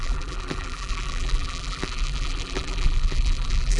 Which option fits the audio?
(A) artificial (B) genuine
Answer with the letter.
A